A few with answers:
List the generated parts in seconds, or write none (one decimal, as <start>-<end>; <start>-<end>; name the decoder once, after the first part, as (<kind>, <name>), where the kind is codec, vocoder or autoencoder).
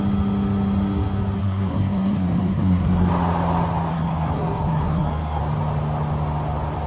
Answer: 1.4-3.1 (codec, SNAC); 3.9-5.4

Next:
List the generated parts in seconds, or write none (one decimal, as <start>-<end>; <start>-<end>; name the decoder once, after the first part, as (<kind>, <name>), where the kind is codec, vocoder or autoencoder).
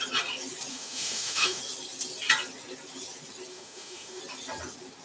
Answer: 0.7-1.6 (autoencoder, DAC-VAE); 3.5-4.2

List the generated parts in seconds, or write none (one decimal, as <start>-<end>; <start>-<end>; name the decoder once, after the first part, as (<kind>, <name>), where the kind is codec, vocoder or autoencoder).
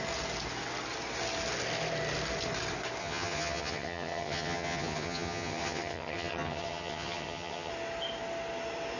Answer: 3.0-7.7 (vocoder, HiFi-GAN)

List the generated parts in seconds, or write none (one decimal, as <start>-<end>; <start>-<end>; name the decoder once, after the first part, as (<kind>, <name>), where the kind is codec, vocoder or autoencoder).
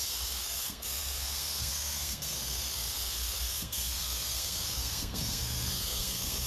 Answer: 0.0-6.5 (codec, SNAC)